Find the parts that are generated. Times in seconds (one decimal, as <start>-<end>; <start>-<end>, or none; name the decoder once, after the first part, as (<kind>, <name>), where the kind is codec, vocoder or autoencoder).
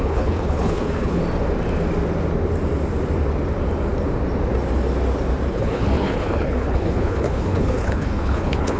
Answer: 0.0-1.2 (codec, HILCodec); 5.5-8.8